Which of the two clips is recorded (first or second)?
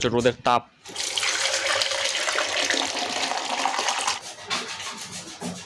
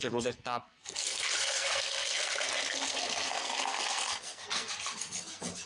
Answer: first